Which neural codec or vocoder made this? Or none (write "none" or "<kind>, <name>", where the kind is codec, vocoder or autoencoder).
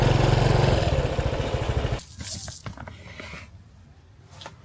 none